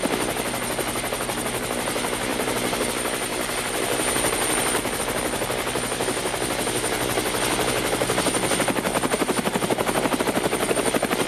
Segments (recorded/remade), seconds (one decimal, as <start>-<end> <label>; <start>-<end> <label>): 0.0-2.3 recorded; 2.3-2.9 remade; 2.9-3.3 recorded; 3.3-5.0 remade; 5.0-8.9 recorded; 8.9-10.2 remade; 10.2-11.3 recorded

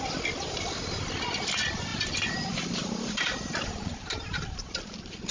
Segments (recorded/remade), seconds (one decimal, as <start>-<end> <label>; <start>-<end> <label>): 0.0-1.9 recorded; 1.9-5.3 remade

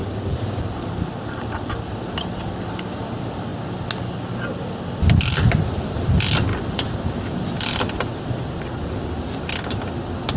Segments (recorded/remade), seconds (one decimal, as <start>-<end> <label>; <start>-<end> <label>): 0.0-2.0 remade; 2.0-6.5 recorded; 6.5-8.2 remade; 8.2-10.4 recorded

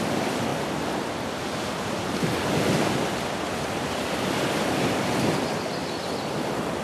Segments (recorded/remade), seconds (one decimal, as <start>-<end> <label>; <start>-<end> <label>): 0.0-0.5 remade; 0.5-3.9 recorded; 3.9-6.8 remade

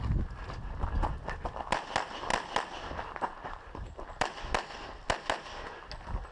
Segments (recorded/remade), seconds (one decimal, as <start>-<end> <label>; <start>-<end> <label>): 0.0-6.3 recorded

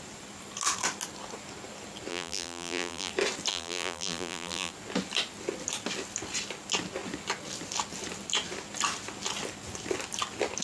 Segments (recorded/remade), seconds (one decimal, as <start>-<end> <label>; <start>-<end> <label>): 0.0-2.1 recorded; 2.1-3.1 remade; 3.1-3.5 recorded; 3.5-4.7 remade; 4.7-10.6 recorded

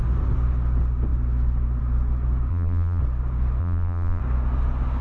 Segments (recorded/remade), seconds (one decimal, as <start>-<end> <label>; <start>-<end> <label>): 0.0-2.5 recorded; 2.5-3.0 remade; 3.0-3.6 recorded; 3.6-4.2 remade; 4.2-5.0 recorded